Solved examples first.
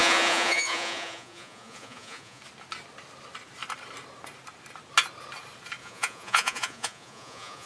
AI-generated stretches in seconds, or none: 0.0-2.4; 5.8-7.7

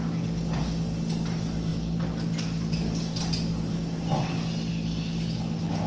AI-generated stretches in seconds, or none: none